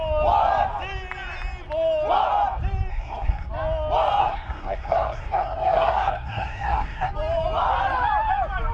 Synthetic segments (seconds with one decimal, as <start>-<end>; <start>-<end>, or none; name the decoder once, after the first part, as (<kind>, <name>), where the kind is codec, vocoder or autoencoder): 2.9-3.5 (codec, SNAC); 4.2-7.1

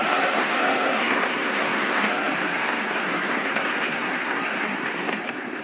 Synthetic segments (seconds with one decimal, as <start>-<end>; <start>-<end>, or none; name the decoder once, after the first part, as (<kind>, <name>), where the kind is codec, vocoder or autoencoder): 0.0-5.6 (codec, SNAC)

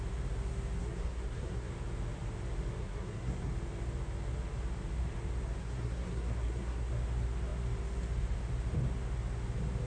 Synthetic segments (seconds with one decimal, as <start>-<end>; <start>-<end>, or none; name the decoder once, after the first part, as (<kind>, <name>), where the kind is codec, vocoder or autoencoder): 0.8-1.7 (codec, SNAC); 2.8-3.5; 5.6-6.9